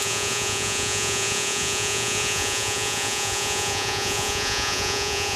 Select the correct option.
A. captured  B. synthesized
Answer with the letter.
B